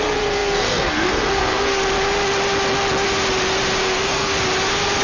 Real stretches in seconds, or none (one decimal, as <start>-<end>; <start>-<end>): 1.8-3.8; 4.3-5.0